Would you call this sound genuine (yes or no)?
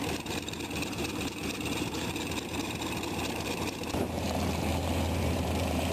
no